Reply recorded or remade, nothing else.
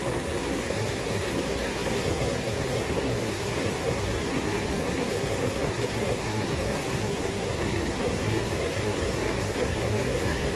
remade